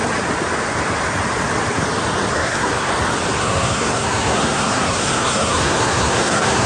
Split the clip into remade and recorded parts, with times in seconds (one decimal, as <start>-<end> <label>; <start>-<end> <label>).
0.0-2.3 recorded; 2.3-2.9 remade; 2.9-3.4 recorded; 3.4-6.7 remade